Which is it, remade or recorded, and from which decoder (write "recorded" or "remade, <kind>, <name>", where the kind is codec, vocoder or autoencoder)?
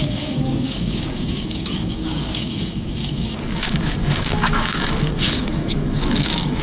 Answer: remade, codec, DAC